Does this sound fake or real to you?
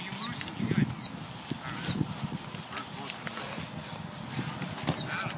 real